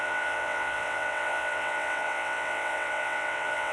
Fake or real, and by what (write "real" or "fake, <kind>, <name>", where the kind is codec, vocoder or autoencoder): fake, vocoder, WaveNeXt